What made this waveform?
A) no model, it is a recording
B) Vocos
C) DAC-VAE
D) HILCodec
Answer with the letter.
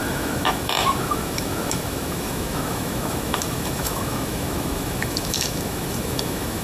C